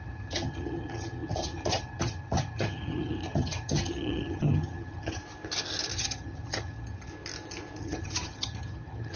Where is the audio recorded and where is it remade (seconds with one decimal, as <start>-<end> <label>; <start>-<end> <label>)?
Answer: 0.0-5.2 remade; 5.2-5.9 recorded; 5.9-7.1 remade; 7.1-7.8 recorded; 7.8-9.2 remade

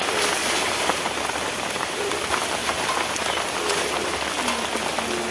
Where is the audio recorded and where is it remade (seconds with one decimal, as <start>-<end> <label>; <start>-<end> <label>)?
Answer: 0.0-0.4 recorded; 0.4-2.1 remade; 2.1-2.6 recorded; 2.6-4.1 remade; 4.1-5.3 recorded